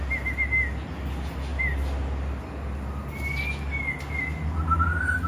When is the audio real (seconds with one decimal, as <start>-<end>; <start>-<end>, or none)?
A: 0.0-5.3